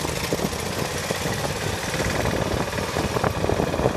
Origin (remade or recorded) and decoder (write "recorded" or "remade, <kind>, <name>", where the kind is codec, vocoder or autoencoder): recorded